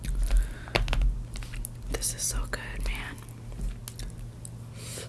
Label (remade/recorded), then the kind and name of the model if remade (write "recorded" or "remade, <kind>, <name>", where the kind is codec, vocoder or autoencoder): recorded